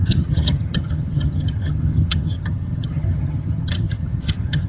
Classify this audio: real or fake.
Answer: fake